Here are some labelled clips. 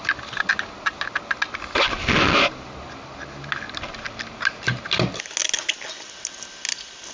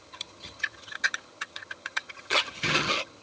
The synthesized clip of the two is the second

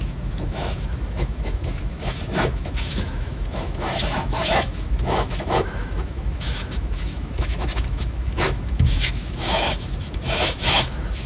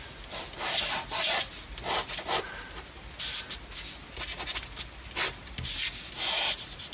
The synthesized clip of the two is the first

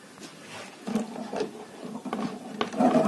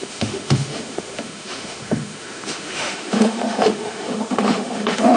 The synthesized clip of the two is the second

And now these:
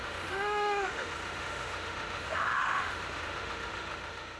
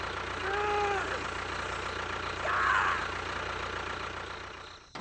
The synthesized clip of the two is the first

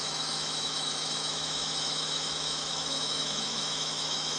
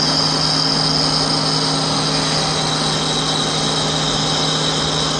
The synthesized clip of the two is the first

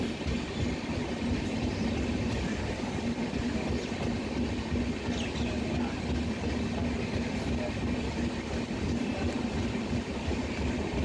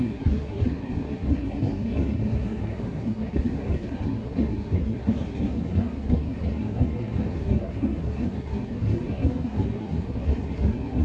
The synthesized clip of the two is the second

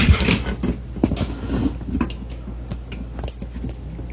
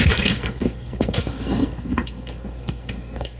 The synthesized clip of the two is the second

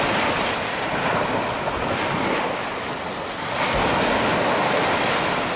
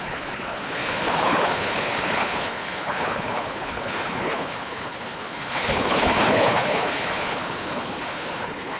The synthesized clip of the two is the second